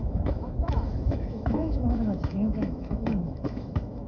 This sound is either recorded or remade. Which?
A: remade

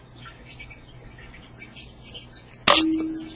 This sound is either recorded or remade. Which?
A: recorded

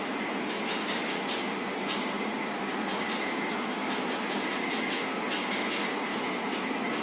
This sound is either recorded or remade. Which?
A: recorded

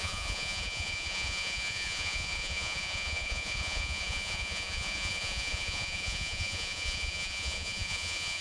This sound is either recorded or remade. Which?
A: remade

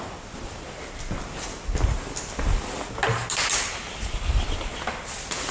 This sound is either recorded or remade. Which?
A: recorded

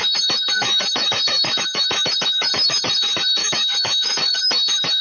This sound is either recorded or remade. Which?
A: remade